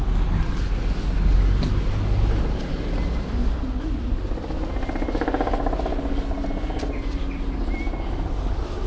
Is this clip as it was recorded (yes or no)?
yes